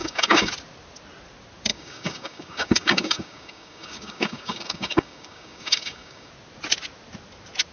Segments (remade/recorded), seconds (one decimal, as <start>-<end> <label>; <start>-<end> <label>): 0.0-0.5 remade; 0.5-1.7 recorded; 1.7-6.3 remade; 6.3-7.7 recorded